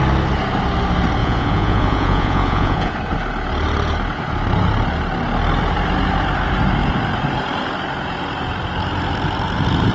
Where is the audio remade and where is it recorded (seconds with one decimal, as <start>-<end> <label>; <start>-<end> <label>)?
0.0-1.2 recorded; 1.2-2.9 remade; 2.9-9.9 recorded